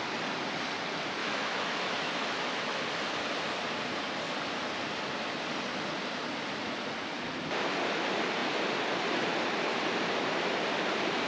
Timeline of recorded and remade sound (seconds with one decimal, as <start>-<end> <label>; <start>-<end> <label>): 0.0-1.2 recorded; 1.2-2.8 remade; 2.8-11.3 recorded